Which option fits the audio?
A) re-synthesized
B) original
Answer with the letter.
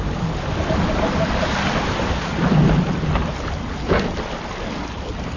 B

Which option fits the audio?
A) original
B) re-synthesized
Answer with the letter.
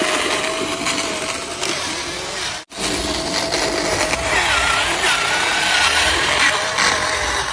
A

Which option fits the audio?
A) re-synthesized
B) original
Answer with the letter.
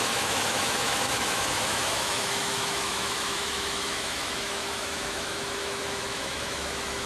A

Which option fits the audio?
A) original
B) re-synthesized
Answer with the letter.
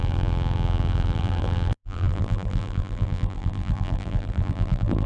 B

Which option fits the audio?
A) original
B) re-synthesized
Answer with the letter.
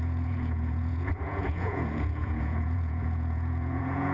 B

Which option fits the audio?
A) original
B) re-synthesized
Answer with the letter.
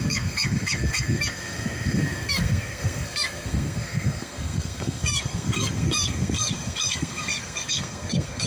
B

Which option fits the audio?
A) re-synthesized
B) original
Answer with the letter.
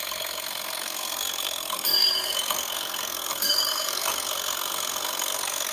A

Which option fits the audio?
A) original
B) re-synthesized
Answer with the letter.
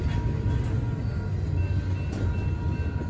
A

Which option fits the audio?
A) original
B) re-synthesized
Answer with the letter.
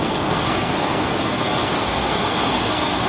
B